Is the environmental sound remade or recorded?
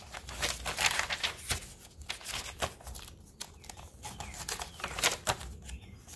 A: recorded